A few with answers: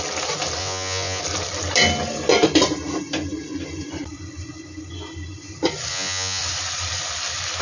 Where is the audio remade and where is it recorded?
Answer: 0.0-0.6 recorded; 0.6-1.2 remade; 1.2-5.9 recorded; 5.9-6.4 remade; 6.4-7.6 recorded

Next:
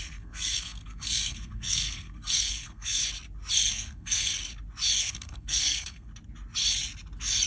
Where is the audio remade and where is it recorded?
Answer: 0.0-3.0 remade; 3.0-3.7 recorded; 3.7-4.3 remade; 4.3-5.0 recorded; 5.0-6.1 remade; 6.1-7.5 recorded

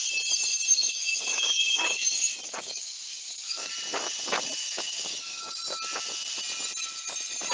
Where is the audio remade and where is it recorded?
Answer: 0.0-0.7 recorded; 0.7-3.7 remade; 3.7-4.6 recorded; 4.6-5.5 remade; 5.5-7.5 recorded